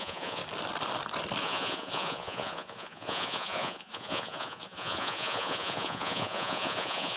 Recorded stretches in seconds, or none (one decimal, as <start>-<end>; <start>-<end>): 0.4-1.4